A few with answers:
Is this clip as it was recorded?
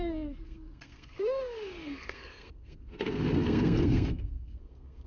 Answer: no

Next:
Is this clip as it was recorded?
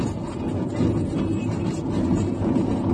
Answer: yes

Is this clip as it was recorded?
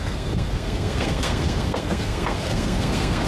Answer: no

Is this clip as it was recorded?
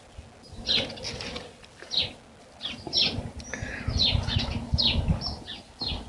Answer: yes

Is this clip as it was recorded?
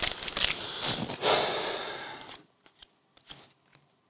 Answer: yes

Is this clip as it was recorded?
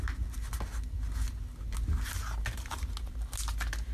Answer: yes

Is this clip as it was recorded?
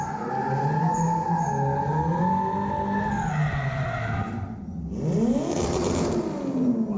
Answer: yes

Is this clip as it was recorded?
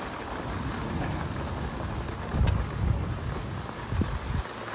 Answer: yes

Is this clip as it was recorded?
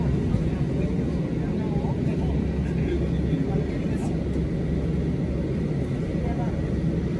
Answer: yes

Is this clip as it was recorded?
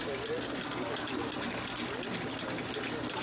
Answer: yes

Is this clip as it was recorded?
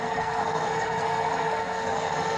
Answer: no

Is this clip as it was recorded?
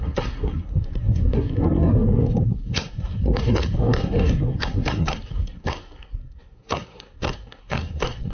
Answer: no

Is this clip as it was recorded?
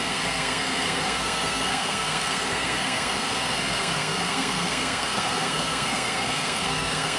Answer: no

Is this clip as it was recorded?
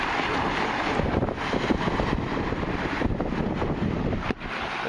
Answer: yes